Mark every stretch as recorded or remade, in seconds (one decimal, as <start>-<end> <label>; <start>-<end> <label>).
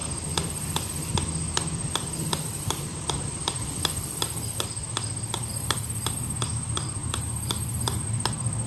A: 0.0-2.5 recorded; 2.5-7.0 remade; 7.0-7.7 recorded; 7.7-8.7 remade